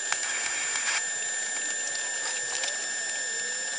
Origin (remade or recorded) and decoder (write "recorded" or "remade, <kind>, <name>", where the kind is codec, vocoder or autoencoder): recorded